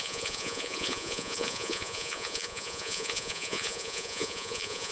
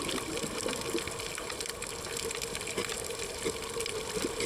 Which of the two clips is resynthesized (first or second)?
first